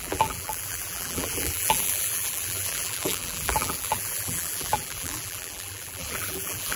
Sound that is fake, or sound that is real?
fake